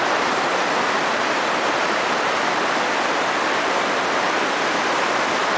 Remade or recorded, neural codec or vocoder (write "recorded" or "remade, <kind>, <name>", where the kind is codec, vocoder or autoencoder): recorded